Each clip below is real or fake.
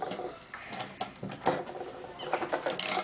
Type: real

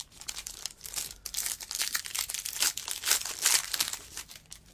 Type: real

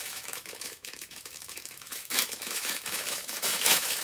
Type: fake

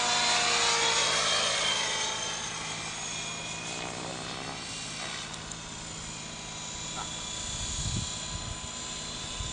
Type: real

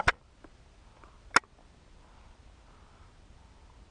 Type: real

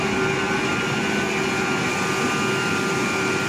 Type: real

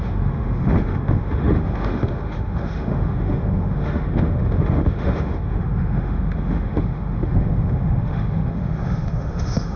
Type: fake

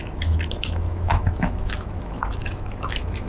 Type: fake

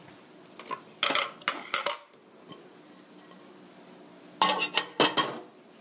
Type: real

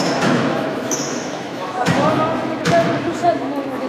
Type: fake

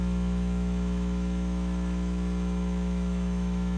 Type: fake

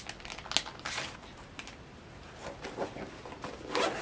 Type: real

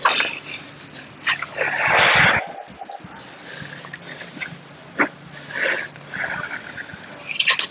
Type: real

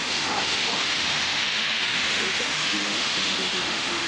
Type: fake